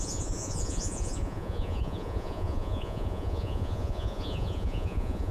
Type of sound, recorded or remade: remade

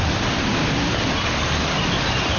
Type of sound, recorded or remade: recorded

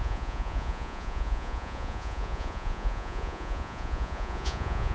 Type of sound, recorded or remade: remade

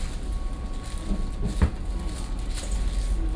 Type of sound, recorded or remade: recorded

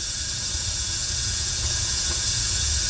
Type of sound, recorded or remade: remade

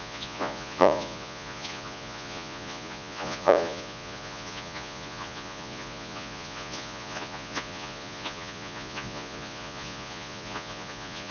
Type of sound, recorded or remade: remade